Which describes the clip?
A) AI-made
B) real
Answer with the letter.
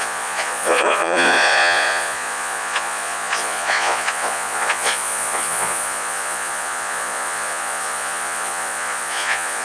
A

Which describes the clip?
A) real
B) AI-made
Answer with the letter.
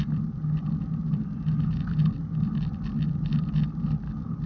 A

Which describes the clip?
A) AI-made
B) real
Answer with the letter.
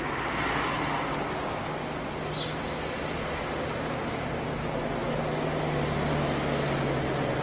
B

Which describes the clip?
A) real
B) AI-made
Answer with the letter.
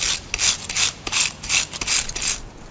A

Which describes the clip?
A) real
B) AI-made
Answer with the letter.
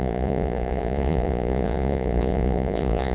B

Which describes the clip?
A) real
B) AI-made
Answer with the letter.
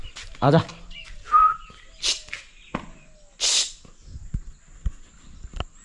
A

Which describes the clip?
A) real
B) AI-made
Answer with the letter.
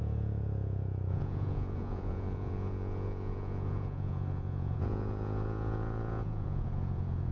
B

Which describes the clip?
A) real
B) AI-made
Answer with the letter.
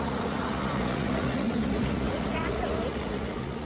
B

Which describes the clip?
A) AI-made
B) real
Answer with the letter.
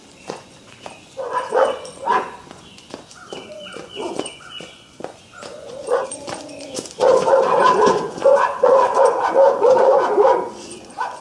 A